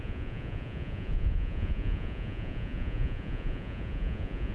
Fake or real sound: fake